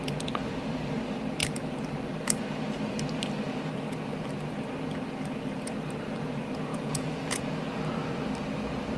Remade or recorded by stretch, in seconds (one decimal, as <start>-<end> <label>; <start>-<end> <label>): 0.0-6.7 recorded; 6.7-7.4 remade; 7.4-9.0 recorded